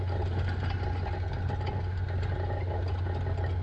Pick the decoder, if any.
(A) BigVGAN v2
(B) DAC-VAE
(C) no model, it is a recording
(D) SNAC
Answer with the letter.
C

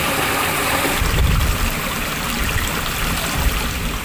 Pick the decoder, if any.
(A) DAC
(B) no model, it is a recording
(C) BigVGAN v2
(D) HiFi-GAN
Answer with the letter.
C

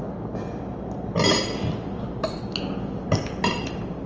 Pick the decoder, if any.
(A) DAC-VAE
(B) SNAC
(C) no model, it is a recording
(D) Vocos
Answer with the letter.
C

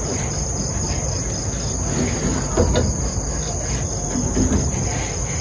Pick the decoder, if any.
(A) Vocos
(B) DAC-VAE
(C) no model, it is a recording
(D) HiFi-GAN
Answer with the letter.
C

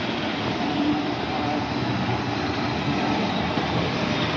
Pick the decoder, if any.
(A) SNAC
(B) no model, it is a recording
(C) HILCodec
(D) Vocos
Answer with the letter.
B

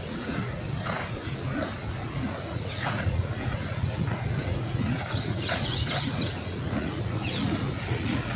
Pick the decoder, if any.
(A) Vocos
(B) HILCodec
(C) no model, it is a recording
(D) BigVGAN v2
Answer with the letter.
A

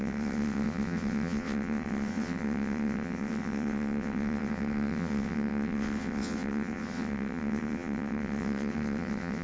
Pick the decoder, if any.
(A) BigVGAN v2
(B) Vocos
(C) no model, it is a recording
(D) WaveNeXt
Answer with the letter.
D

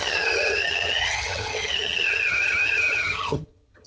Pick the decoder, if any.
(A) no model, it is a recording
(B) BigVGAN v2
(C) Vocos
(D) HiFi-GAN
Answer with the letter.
D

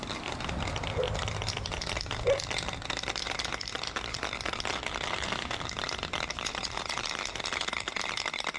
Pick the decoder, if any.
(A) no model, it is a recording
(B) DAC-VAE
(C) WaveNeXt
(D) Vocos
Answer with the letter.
A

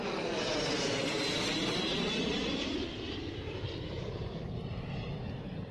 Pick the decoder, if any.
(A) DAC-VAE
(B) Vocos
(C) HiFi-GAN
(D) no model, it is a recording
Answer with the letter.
D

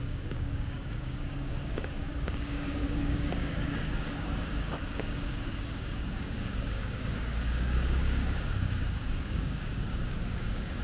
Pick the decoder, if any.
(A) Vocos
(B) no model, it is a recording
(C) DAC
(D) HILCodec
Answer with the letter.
C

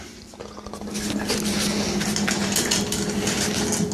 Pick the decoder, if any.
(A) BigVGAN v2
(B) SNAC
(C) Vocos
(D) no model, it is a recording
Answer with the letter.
D